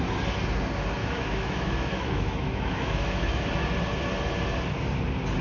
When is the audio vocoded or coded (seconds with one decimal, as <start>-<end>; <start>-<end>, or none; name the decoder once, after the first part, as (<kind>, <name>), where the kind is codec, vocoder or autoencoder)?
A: 1.0-3.5 (autoencoder, DAC-VAE)

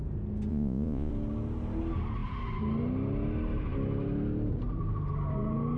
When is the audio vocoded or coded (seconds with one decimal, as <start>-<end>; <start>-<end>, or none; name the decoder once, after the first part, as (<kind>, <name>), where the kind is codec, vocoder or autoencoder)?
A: 0.5-1.1 (vocoder, Vocos)

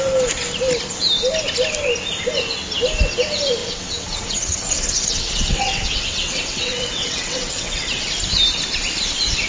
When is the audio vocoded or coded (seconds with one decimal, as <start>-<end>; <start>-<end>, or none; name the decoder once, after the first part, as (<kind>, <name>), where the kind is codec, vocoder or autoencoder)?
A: 3.6-8.1 (vocoder, WaveNeXt)

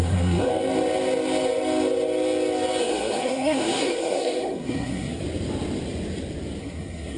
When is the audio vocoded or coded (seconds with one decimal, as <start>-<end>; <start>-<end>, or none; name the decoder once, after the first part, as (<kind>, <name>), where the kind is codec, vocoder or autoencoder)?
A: 0.0-0.5 (codec, SNAC); 2.8-5.2; 6.6-7.2

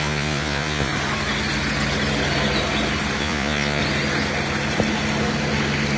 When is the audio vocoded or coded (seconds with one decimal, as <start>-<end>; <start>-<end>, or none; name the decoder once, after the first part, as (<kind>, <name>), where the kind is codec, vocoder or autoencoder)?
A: 0.0-0.9 (vocoder, Vocos); 3.2-3.8